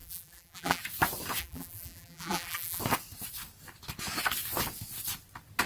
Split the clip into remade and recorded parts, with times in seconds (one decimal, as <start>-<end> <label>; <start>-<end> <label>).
0.0-0.8 remade; 0.8-1.4 recorded; 1.4-2.8 remade; 2.8-5.7 recorded